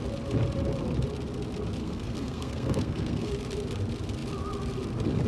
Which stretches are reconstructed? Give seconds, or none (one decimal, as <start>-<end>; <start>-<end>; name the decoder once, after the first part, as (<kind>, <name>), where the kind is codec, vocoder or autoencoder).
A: 1.8-3.3 (codec, SNAC)